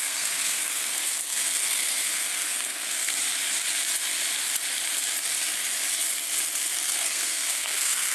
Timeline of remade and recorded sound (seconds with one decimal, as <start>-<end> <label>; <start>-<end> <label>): 0.0-3.1 remade; 3.1-6.7 recorded; 6.7-8.1 remade